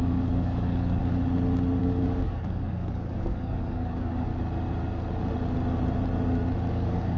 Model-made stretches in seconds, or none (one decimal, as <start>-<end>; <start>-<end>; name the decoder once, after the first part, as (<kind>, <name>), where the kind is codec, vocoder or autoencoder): 0.0-1.0 (codec, DAC); 1.8-4.3; 6.7-7.2